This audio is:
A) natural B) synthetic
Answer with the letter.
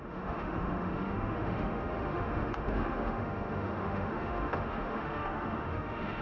B